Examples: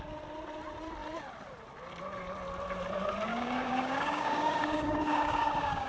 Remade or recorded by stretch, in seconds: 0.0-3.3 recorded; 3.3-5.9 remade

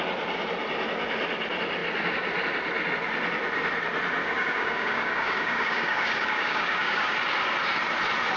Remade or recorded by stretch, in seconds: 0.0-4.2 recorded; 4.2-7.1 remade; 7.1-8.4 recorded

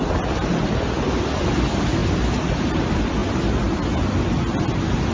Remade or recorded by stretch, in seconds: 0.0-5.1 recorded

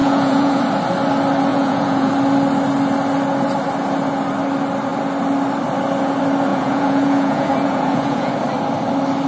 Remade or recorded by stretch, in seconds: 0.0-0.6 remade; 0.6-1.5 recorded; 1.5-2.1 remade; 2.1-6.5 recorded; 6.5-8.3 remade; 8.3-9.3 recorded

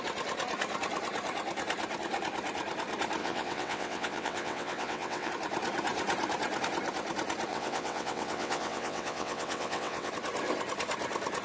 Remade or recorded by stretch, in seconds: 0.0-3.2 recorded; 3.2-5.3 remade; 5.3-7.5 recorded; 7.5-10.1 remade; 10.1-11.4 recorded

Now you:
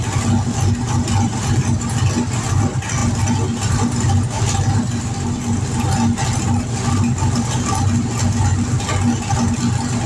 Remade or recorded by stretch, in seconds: 0.0-10.1 recorded